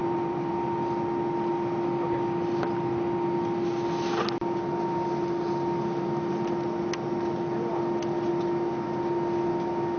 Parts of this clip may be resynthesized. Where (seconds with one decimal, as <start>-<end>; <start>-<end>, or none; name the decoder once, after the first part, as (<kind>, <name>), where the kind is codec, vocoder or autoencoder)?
0.0-0.5 (vocoder, BigVGAN v2)